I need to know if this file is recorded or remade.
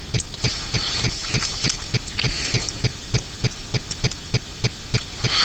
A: recorded